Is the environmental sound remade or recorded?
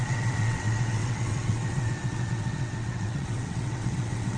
remade